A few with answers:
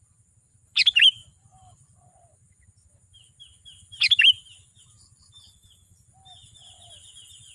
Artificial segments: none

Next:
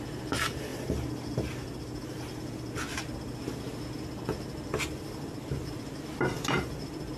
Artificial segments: 0.7-2.7 (vocoder, BigVGAN v2)

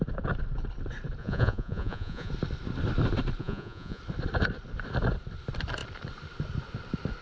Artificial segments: 1.2-2.3 (vocoder, Vocos); 3.4-4.0

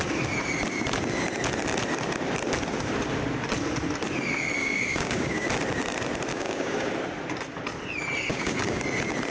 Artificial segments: 4.6-5.5 (codec, DAC); 6.3-6.9; 8.3-8.8

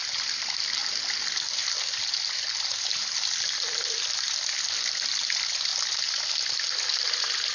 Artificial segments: 0.0-0.8 (vocoder, BigVGAN v2); 4.9-5.7; 6.7-7.5

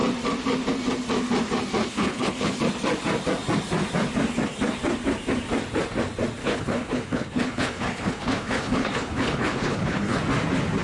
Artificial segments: 1.8-2.6 (codec, HILCodec); 6.4-10.2

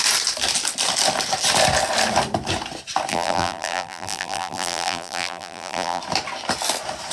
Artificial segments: 3.1-6.0 (vocoder, BigVGAN v2)

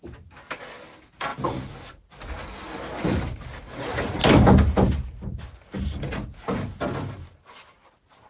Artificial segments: none